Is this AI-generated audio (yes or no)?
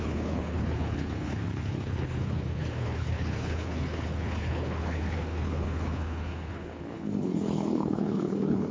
yes